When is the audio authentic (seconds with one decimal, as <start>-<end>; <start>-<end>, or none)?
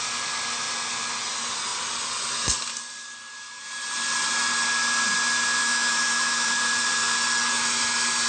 0.0-5.6; 6.5-8.3